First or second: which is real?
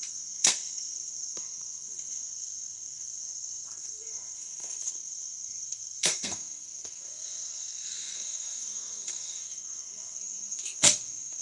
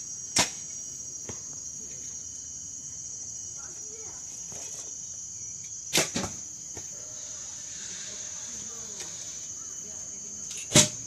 second